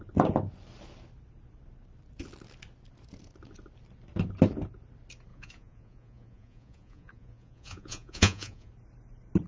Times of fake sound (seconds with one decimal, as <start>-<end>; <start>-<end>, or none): 5.3-8.7